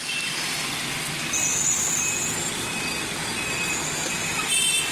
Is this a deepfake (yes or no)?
no